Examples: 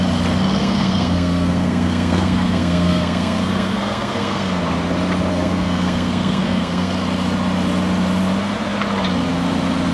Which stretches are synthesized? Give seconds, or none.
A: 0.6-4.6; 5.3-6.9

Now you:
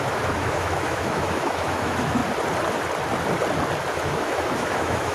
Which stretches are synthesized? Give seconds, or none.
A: 0.0-2.2; 3.9-5.1

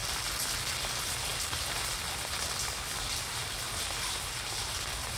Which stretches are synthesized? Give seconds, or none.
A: none

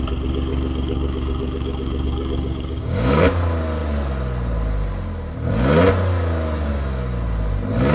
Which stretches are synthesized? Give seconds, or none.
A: 0.5-3.2

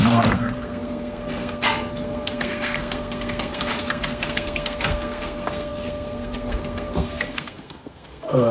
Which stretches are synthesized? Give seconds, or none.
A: 0.0-8.5

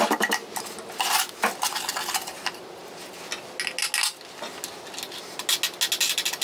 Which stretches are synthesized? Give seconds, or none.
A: none

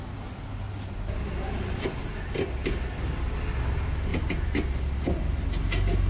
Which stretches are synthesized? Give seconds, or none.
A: none